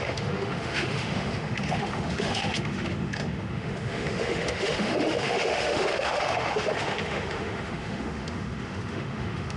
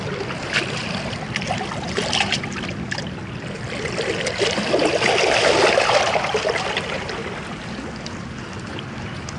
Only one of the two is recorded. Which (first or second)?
second